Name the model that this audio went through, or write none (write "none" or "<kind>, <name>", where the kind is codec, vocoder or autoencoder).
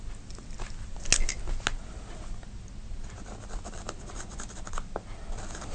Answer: none